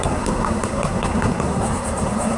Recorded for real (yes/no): no